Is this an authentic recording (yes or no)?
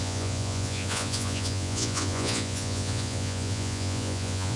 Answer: no